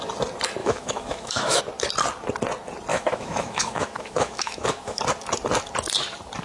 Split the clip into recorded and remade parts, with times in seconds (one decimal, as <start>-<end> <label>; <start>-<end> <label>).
0.0-0.6 recorded; 0.6-1.6 remade; 1.6-2.9 recorded; 2.9-5.0 remade; 5.0-6.4 recorded